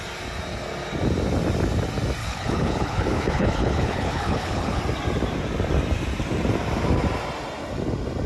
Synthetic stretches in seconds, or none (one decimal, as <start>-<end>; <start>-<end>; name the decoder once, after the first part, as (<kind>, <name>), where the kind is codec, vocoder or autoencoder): 2.2-4.8 (codec, HILCodec)

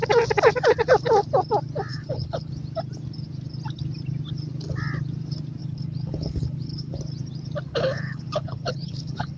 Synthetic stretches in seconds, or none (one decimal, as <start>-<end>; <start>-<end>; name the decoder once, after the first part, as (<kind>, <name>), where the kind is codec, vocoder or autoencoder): 1.9-2.5 (codec, HILCodec); 5.6-7.0; 7.7-9.4

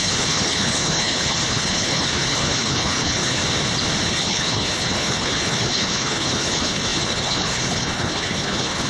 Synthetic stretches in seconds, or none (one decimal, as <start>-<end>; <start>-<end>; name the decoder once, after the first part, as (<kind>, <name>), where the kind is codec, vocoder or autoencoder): 0.0-3.4 (codec, HILCodec); 4.1-8.9